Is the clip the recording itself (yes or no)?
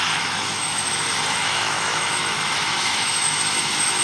no